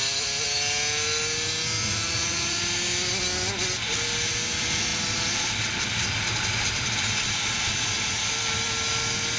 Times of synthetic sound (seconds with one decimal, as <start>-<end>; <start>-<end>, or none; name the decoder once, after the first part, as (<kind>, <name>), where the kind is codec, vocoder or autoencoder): 1.8-2.6 (vocoder, Vocos)